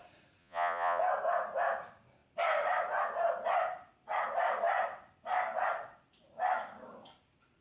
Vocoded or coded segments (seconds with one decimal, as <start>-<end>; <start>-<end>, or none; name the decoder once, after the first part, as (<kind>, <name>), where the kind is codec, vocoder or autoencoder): 0.4-1.0 (vocoder, Vocos)